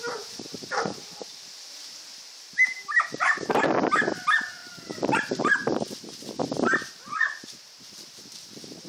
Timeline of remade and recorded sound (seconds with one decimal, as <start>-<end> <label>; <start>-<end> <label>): 0.0-3.6 remade; 3.6-4.6 recorded; 4.6-5.7 remade; 5.7-8.9 recorded